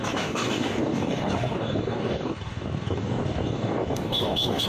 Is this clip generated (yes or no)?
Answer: yes